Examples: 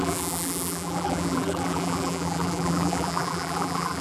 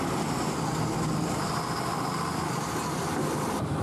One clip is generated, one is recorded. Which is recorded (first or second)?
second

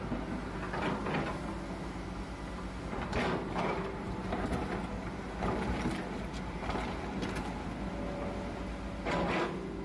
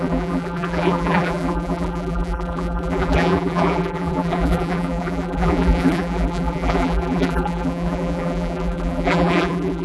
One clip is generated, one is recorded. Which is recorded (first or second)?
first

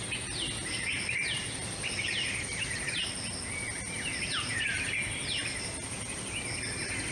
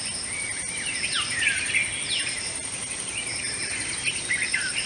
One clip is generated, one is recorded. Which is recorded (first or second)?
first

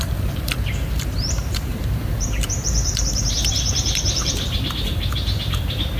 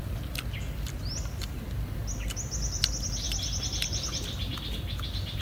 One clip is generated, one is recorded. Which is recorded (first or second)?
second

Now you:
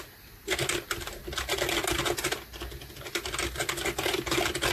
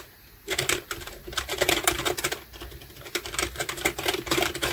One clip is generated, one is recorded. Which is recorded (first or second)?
first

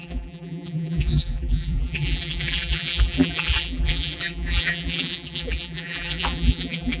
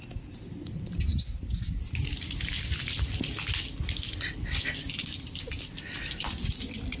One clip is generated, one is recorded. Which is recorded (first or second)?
second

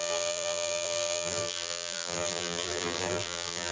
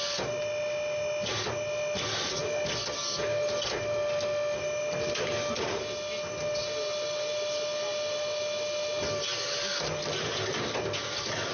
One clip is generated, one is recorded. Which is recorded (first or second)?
second